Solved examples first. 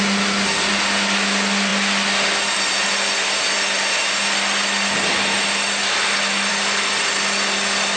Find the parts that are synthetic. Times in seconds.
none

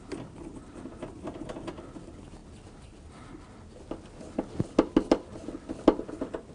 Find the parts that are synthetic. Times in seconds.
none

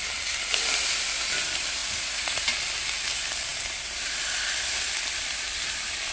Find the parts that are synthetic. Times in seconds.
1.8-2.4 (vocoder, Vocos)

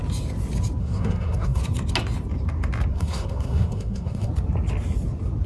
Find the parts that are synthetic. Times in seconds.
0.8-1.6 (codec, SNAC); 2.9-4.3

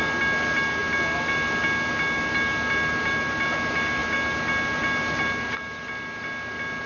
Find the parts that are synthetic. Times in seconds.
none